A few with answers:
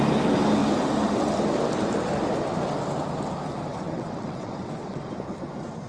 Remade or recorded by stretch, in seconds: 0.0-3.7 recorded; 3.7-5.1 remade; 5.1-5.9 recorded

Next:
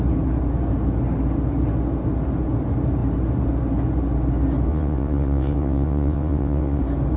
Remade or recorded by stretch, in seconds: 0.0-4.7 recorded; 4.7-6.8 remade; 6.8-7.2 recorded

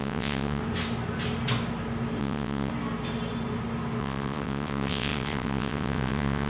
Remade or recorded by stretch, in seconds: 0.0-0.6 remade; 0.6-2.2 recorded; 2.2-2.7 remade; 2.7-4.0 recorded; 4.0-6.5 remade

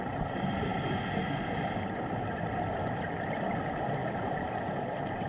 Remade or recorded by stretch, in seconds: 0.0-5.3 recorded

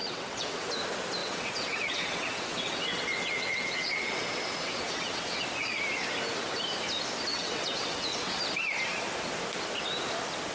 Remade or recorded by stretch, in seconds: 0.0-0.7 remade; 0.7-1.2 recorded; 1.2-5.4 remade; 5.4-7.3 recorded; 7.3-8.4 remade; 8.4-10.5 recorded

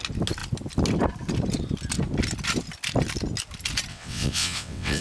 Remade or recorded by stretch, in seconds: 0.0-3.9 recorded; 3.9-5.0 remade

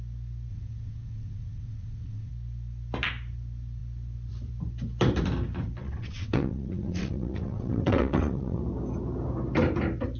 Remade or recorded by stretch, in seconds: 0.0-0.5 recorded; 0.5-2.3 remade; 2.3-5.8 recorded; 5.8-8.6 remade; 8.6-10.2 recorded

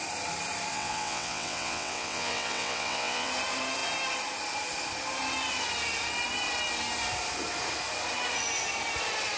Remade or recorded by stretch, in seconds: 0.0-0.7 recorded; 0.7-3.3 remade; 3.3-9.4 recorded